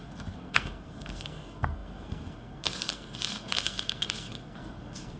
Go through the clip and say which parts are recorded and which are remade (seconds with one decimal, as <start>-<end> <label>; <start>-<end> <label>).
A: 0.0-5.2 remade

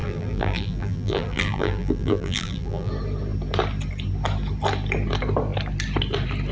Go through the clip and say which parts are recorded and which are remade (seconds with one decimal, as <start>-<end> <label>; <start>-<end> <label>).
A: 0.0-2.9 remade; 2.9-6.5 recorded

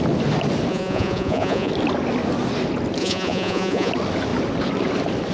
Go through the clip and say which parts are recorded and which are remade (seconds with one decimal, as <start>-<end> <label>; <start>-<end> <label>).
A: 0.0-0.7 recorded; 0.7-1.7 remade; 1.7-3.0 recorded; 3.0-3.9 remade; 3.9-5.3 recorded